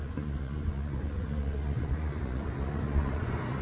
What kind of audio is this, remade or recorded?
remade